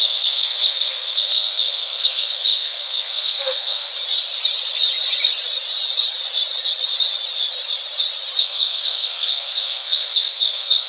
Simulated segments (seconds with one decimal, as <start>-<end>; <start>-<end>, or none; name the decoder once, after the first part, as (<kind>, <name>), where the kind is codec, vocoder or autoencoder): 0.0-3.9 (codec, SNAC); 8.4-10.9